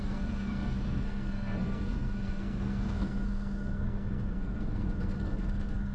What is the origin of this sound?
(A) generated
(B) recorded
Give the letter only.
A